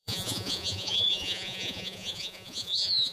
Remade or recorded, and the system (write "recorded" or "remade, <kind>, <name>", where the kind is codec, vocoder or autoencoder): remade, vocoder, Vocos